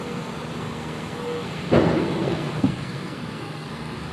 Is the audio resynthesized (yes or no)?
yes